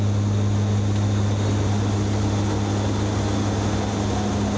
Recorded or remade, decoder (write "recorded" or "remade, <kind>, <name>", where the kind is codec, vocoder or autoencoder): recorded